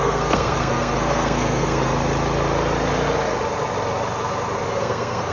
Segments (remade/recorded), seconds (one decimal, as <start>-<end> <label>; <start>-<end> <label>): 0.0-1.9 remade; 1.9-4.8 recorded; 4.8-5.3 remade